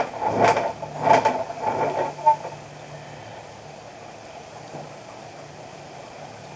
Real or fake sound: real